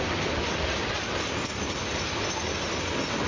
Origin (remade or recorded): recorded